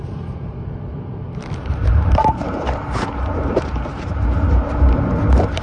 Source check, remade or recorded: remade